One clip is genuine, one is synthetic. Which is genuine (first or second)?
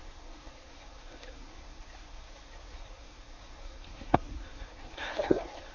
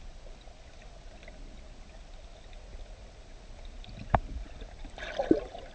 second